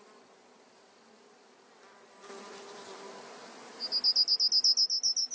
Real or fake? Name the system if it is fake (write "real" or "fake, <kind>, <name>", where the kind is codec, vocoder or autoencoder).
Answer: real